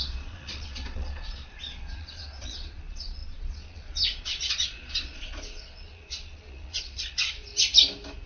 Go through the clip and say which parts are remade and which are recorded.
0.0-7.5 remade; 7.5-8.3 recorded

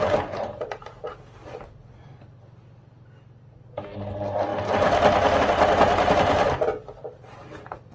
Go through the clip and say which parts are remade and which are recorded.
0.0-7.9 recorded

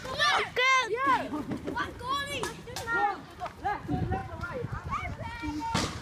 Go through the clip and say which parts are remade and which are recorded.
0.0-6.0 recorded

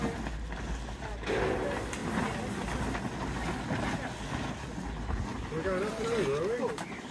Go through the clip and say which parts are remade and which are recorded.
0.0-7.1 recorded